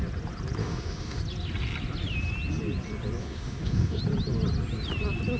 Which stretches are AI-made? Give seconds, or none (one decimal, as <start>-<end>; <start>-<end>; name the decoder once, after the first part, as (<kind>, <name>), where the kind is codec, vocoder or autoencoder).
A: 0.6-1.2 (autoencoder, DAC-VAE); 3.2-4.0